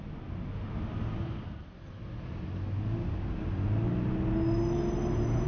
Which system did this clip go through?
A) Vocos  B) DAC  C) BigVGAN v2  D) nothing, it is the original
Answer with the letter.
D